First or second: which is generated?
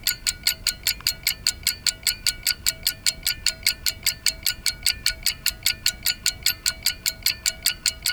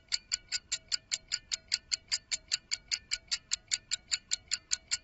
second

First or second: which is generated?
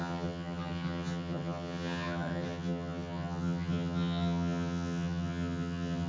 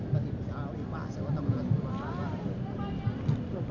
first